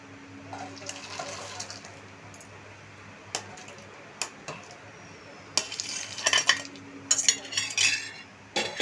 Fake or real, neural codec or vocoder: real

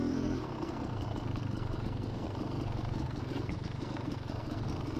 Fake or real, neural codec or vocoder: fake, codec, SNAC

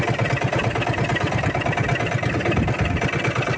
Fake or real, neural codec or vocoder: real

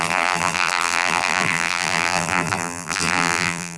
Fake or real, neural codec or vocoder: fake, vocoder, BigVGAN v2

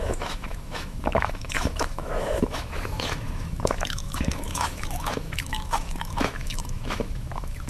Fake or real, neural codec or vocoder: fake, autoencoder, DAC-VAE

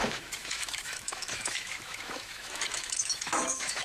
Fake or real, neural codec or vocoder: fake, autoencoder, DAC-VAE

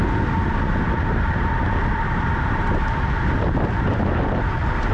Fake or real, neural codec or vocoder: real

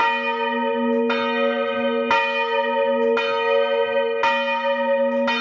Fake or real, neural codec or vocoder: real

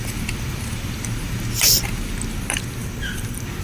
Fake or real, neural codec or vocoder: real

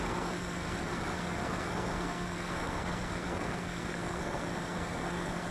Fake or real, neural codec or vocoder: fake, codec, SNAC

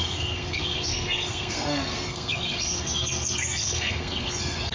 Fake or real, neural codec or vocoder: fake, codec, SNAC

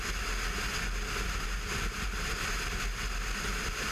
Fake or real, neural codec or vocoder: real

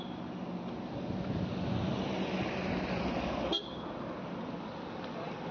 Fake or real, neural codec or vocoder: real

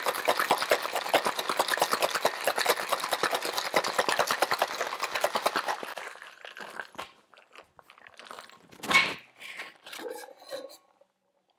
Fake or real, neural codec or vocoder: real